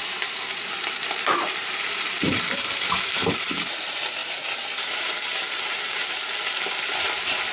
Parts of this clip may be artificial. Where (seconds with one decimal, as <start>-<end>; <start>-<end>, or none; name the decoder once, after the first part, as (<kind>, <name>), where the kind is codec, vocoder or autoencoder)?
0.0-7.5 (vocoder, BigVGAN v2)